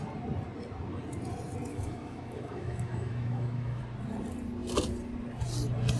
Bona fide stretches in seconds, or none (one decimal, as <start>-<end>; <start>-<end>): 0.0-1.7; 3.8-6.0